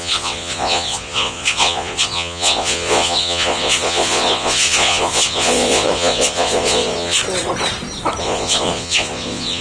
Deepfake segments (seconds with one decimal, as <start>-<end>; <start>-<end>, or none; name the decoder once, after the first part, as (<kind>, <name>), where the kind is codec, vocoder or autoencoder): 0.0-7.2 (vocoder, Vocos); 8.2-9.6